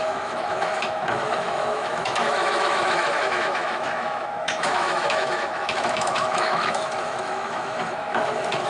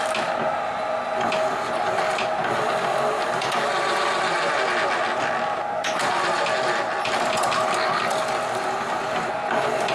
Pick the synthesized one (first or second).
first